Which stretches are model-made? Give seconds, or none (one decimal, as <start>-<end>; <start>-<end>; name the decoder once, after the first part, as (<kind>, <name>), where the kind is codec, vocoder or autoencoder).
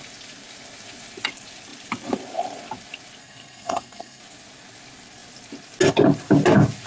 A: 3.2-4.2 (codec, SNAC)